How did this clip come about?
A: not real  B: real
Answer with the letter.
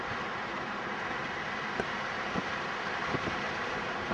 A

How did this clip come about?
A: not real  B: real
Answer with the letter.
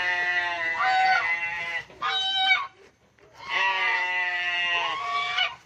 A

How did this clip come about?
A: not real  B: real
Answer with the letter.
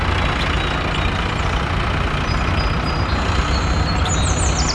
B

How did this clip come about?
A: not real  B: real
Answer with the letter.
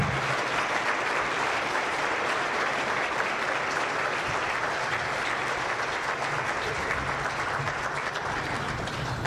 A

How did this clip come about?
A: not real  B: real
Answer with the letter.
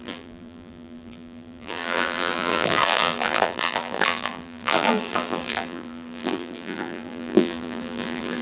A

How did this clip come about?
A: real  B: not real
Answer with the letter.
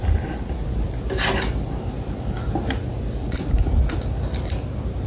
A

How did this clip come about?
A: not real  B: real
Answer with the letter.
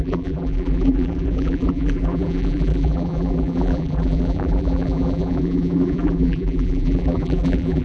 A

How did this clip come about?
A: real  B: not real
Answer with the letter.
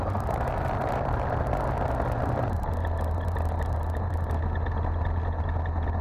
A